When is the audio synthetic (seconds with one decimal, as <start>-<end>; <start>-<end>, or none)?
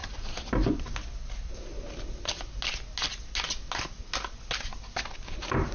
none